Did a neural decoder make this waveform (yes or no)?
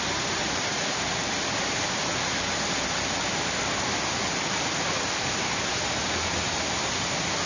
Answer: no